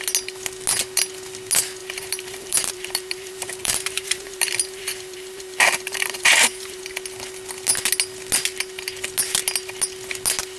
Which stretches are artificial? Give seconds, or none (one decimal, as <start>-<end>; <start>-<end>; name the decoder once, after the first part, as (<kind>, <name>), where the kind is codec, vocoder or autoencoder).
1.8-6.8 (vocoder, BigVGAN v2)